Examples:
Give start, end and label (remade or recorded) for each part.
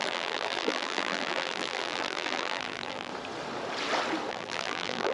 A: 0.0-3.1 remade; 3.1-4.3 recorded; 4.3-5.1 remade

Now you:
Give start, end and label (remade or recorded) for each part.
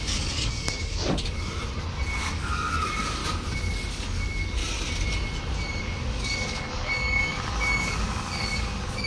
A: 0.0-1.5 remade; 1.5-2.2 recorded; 2.2-3.2 remade; 3.2-3.9 recorded; 3.9-4.6 remade; 4.6-5.8 recorded; 5.8-9.1 remade